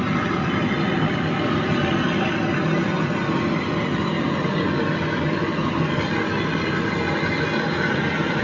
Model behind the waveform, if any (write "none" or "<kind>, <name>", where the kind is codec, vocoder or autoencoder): none